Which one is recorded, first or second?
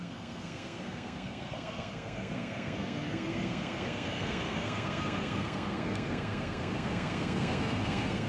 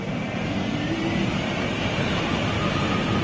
second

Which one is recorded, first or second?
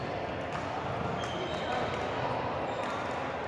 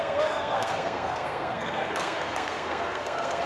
first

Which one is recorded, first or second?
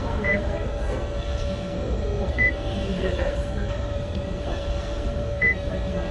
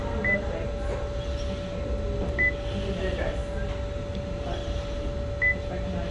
second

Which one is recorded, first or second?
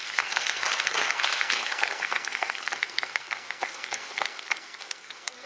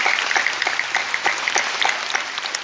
second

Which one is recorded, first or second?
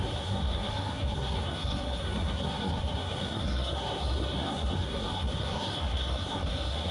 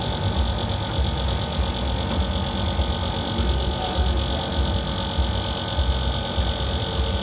second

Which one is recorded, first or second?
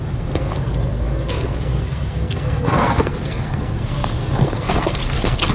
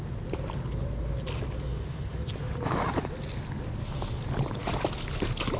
second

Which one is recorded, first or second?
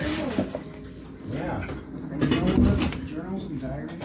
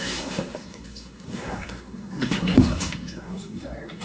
first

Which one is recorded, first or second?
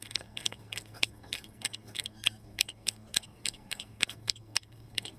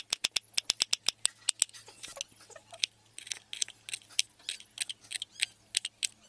second